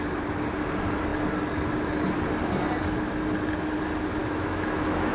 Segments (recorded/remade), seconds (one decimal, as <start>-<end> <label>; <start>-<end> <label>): 0.0-4.2 recorded; 4.2-5.1 remade